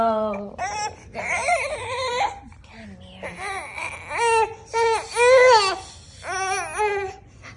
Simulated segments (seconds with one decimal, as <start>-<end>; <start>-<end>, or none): 0.0-2.5; 7.1-7.6